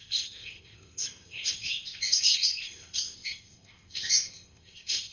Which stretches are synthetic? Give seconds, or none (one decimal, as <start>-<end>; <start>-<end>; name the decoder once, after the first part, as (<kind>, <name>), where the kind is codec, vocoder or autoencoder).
0.0-5.1 (codec, ZipCodec)